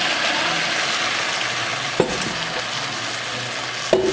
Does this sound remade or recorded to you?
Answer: recorded